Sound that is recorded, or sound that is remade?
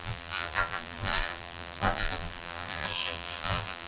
remade